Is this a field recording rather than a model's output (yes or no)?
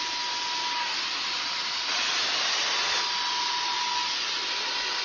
yes